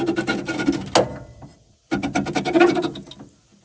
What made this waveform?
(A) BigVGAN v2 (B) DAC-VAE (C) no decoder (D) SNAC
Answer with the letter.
C